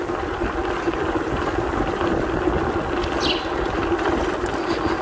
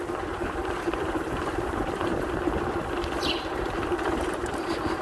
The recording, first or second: first